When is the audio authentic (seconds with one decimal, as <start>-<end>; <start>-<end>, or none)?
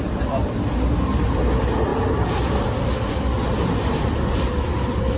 0.0-5.2